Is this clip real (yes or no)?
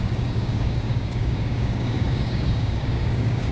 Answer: no